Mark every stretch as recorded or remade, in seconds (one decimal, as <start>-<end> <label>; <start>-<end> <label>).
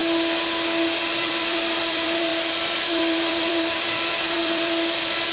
0.0-1.1 recorded; 1.1-5.3 remade